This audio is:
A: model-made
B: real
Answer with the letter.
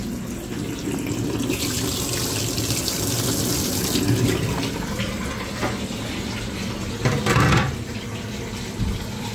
B